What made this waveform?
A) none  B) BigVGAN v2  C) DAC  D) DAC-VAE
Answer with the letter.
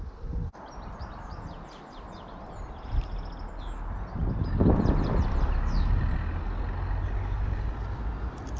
A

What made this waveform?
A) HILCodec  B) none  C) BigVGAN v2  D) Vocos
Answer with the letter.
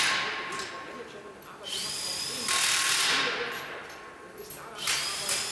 B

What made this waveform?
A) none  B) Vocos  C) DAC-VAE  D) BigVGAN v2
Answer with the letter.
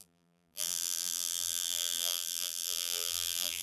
D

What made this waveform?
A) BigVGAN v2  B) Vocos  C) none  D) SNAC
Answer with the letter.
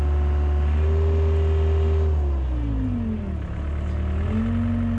C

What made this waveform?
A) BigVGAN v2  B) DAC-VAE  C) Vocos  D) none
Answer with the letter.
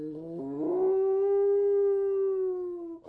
D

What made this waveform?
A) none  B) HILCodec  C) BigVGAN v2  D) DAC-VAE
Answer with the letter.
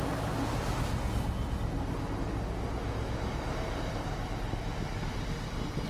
A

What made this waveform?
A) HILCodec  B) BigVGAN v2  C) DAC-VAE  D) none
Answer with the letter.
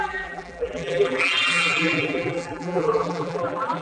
B